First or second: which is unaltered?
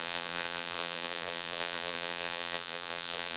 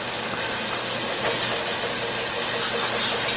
second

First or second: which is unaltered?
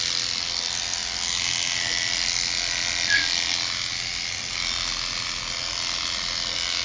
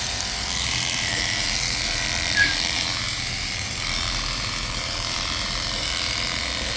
first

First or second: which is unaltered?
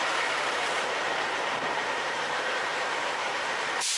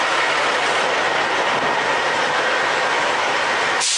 second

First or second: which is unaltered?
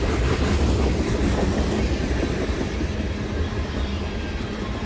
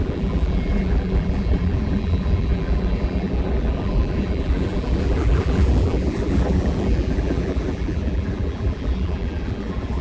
first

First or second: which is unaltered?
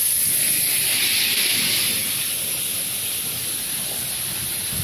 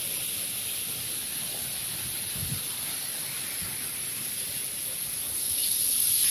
first